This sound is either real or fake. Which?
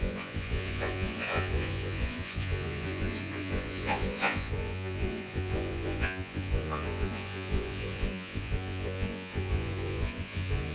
fake